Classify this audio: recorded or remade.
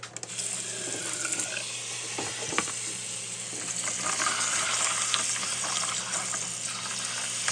recorded